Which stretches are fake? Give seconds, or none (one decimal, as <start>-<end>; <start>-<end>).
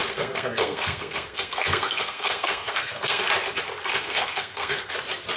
0.0-3.2; 3.9-4.9